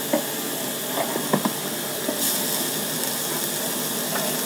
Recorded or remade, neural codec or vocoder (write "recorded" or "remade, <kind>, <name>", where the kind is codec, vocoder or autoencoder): recorded